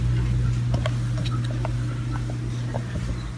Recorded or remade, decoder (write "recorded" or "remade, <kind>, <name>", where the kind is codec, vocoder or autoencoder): recorded